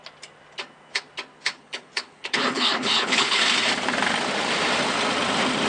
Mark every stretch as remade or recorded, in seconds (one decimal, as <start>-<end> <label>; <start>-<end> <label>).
0.0-1.5 recorded; 1.5-3.4 remade; 3.4-5.7 recorded